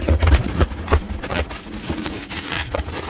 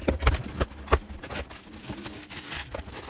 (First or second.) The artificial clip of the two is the first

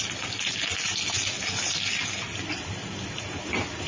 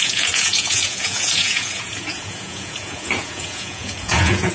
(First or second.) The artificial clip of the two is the second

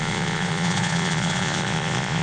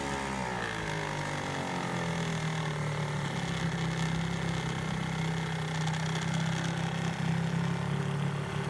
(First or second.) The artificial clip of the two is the first